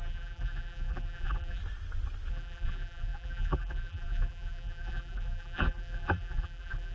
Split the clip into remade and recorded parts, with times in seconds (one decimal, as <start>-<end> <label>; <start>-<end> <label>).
0.0-1.6 remade; 1.6-2.3 recorded; 2.3-6.9 remade